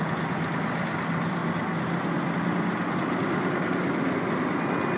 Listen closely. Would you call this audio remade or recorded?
recorded